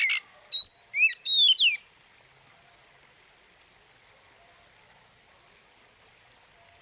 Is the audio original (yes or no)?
yes